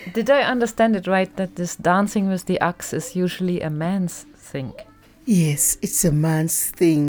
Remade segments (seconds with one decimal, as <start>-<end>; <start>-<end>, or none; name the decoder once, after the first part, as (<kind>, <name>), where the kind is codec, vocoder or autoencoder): none